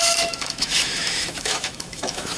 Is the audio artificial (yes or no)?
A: yes